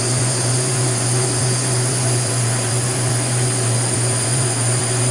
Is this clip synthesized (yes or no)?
yes